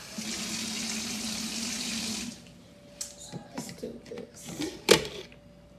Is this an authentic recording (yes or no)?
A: yes